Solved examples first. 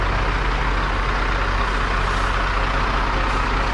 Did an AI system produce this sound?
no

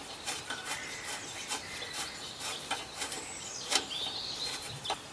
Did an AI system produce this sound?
no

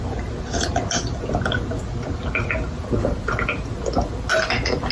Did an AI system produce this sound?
no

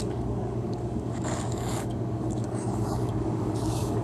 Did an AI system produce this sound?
yes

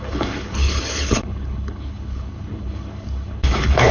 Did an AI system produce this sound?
yes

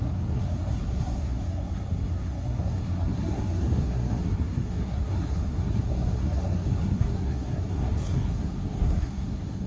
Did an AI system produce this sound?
yes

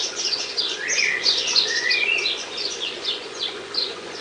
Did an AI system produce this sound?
yes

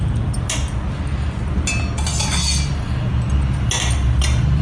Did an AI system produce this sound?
no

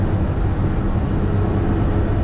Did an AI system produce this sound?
no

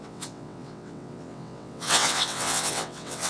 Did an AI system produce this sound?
yes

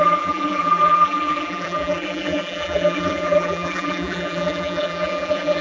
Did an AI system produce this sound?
yes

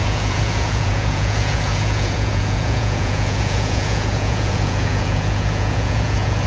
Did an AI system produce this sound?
yes